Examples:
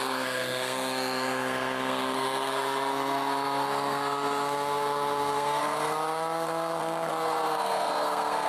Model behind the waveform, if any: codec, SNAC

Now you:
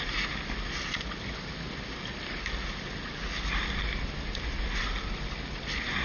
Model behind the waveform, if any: none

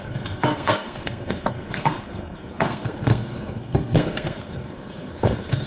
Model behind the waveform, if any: codec, SNAC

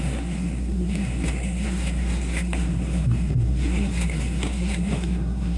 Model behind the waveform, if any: codec, SNAC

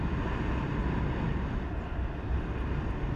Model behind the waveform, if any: none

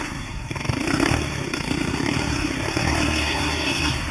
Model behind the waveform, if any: codec, SNAC